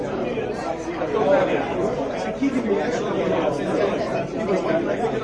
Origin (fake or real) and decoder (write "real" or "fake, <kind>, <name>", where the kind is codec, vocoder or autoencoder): fake, vocoder, BigVGAN v2